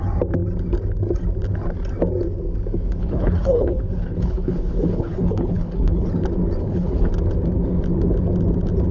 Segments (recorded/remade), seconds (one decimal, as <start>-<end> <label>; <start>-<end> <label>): 0.0-3.0 recorded; 3.0-6.1 remade; 6.1-6.6 recorded; 6.6-7.1 remade; 7.1-8.9 recorded